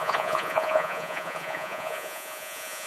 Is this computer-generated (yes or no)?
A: yes